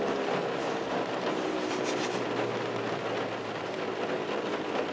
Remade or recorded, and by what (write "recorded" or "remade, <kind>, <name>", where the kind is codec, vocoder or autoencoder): recorded